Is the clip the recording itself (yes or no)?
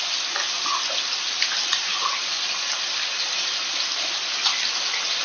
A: yes